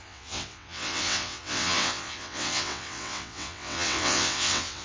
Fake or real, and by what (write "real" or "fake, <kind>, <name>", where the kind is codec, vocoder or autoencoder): fake, vocoder, WaveNeXt